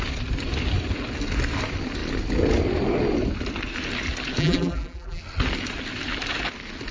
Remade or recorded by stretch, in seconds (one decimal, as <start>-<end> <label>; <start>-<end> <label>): 0.0-4.4 recorded; 4.4-5.2 remade; 5.2-6.9 recorded